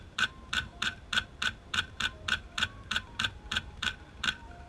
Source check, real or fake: fake